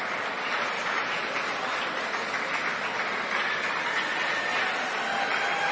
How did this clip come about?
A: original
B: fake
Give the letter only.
A